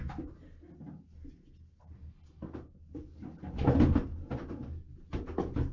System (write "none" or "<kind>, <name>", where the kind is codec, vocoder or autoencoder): none